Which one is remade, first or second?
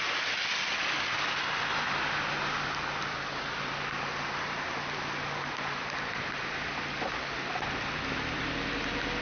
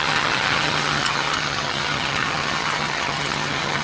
second